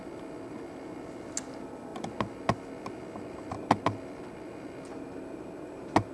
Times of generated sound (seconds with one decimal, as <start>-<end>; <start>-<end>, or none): none

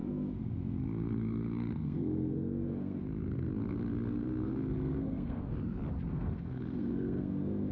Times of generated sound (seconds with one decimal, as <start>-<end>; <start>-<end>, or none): 0.0-3.5; 4.2-5.5; 6.1-7.7

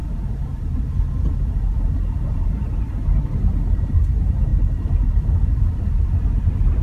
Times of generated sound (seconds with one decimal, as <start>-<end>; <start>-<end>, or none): none

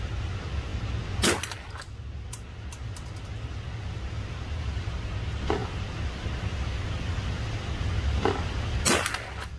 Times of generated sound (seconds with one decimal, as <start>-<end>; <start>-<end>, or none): none

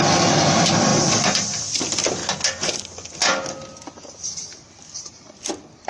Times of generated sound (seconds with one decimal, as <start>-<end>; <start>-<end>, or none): none